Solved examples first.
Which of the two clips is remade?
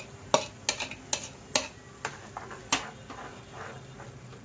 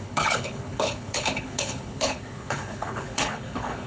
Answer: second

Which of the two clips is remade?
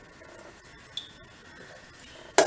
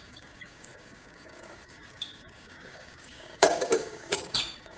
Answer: second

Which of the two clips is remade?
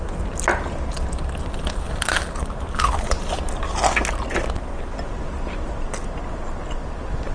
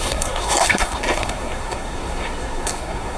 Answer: second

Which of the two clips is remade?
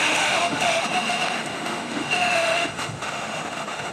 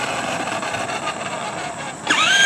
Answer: first